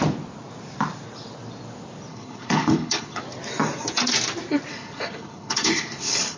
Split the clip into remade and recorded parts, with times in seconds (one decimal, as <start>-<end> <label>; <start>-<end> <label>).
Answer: 0.0-2.1 recorded; 2.1-3.2 remade; 3.2-4.7 recorded; 4.7-6.4 remade